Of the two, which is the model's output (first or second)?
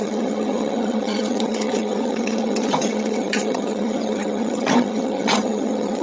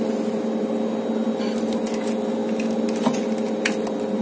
first